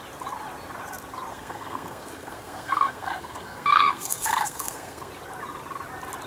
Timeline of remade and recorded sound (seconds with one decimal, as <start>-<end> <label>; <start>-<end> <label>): 0.0-1.3 recorded; 1.3-5.1 remade; 5.1-6.3 recorded